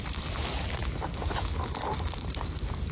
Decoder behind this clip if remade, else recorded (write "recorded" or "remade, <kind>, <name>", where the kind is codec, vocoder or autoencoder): recorded